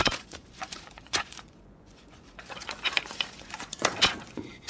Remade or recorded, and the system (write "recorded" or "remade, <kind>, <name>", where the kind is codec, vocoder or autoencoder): remade, vocoder, Vocos